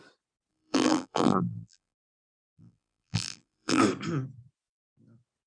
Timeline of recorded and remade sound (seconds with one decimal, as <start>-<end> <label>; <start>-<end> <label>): 0.0-0.5 recorded; 0.5-3.8 remade; 3.8-5.5 recorded